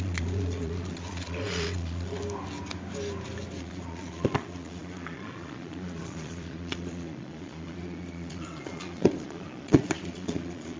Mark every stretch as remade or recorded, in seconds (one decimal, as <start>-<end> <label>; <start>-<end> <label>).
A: 0.0-2.2 remade; 2.2-3.6 recorded; 3.6-10.8 remade